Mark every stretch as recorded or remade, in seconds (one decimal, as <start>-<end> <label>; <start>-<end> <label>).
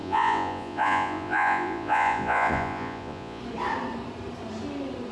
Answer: 0.0-3.4 remade; 3.4-5.1 recorded